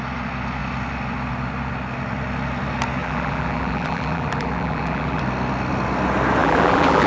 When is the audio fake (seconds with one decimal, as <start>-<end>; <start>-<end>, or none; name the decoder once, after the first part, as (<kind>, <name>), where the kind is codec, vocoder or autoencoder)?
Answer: 3.0-5.2 (vocoder, BigVGAN v2); 6.4-7.1